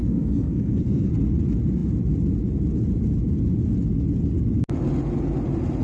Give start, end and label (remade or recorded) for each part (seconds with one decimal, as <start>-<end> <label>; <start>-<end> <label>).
0.0-1.1 remade; 1.1-5.8 recorded